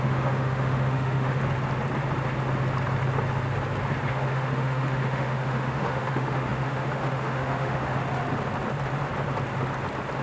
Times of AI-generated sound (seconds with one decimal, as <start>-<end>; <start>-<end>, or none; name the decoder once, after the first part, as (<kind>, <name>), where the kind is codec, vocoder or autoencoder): 0.0-1.4 (autoencoder, DAC-VAE); 4.1-8.0